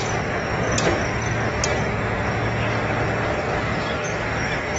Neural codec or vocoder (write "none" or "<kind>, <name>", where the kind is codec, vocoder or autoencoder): none